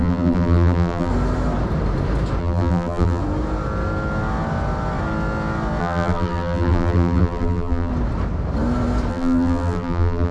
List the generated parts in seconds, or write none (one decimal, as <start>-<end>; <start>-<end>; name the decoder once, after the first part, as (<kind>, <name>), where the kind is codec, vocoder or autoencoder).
0.0-1.1 (vocoder, BigVGAN v2); 2.4-3.2; 5.8-7.9; 9.1-10.3